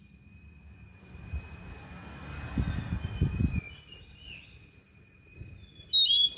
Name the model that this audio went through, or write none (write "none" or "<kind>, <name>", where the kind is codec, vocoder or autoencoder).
none